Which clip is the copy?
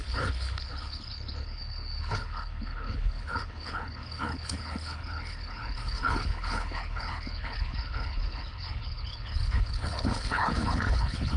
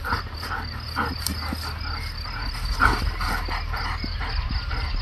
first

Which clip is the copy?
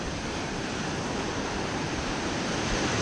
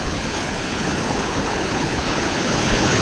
second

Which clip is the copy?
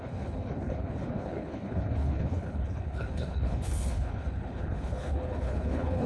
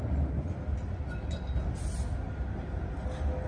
first